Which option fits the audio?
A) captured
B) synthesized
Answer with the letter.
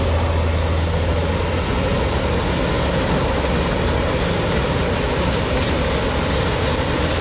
A